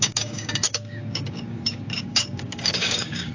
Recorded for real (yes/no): no